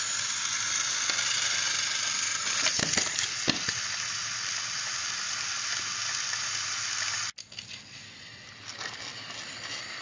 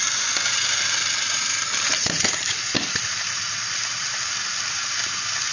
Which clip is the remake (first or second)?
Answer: second